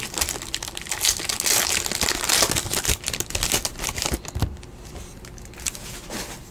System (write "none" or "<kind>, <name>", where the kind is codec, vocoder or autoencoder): none